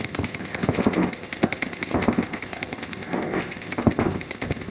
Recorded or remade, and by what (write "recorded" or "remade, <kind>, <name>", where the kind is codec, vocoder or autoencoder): remade, codec, ZipCodec